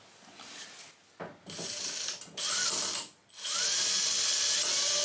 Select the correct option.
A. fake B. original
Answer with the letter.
B